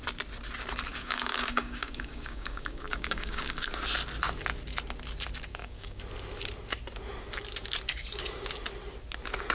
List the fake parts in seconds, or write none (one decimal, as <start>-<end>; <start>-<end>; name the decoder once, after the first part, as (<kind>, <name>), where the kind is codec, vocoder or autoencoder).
0.9-3.7 (codec, DAC); 5.5-6.0